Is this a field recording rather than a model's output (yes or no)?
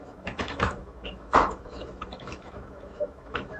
no